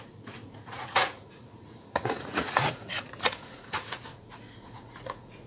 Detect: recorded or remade remade